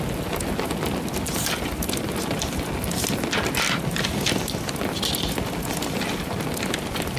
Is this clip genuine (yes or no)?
yes